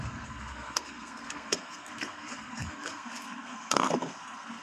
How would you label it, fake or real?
fake